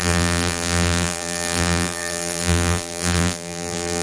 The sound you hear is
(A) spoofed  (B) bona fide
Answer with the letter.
A